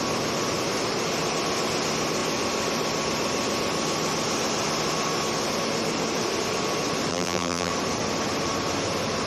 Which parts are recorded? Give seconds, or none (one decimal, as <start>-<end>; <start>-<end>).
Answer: 0.0-7.1; 7.7-9.3